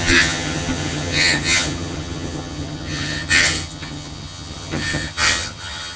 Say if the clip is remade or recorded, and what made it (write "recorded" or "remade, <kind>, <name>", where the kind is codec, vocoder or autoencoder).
remade, vocoder, HiFi-GAN